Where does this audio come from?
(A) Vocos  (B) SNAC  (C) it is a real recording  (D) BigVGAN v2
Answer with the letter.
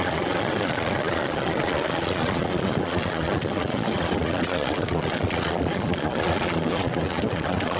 A